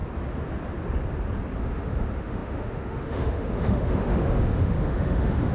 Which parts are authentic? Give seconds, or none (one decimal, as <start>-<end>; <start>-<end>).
0.0-1.6